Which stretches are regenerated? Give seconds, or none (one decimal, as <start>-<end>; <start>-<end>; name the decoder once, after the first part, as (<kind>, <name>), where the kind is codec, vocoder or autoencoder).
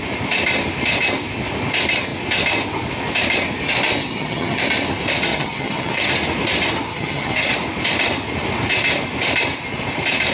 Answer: 4.0-4.6 (vocoder, HiFi-GAN); 5.3-6.1; 6.9-7.5